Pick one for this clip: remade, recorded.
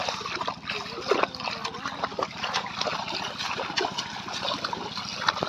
recorded